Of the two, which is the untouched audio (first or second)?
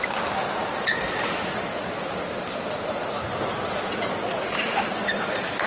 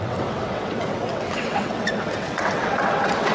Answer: first